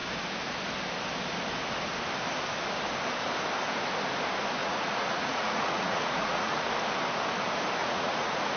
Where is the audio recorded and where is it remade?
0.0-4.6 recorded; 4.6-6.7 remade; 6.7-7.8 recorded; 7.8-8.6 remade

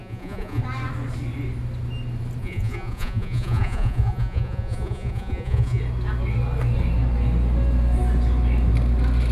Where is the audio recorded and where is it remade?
0.0-0.6 remade; 0.6-2.4 recorded; 2.4-5.8 remade; 5.8-9.3 recorded

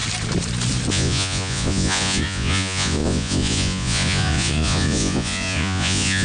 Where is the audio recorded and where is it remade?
0.0-0.9 recorded; 0.9-6.2 remade